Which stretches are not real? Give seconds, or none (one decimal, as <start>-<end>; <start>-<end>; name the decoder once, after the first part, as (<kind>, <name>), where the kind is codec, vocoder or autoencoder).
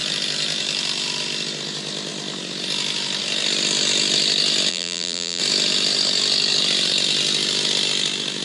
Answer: 4.7-5.4 (vocoder, BigVGAN v2)